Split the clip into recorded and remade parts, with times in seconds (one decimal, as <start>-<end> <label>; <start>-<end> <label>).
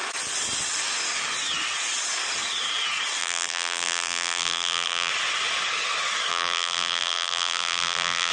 0.0-3.2 recorded; 3.2-5.1 remade; 5.1-6.3 recorded; 6.3-8.3 remade